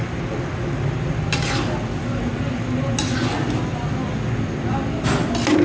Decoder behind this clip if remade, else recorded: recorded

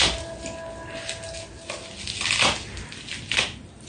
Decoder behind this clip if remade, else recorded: recorded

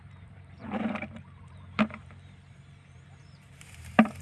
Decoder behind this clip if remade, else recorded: remade, vocoder, BigVGAN v2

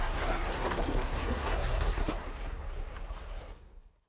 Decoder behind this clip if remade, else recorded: remade, codec, SNAC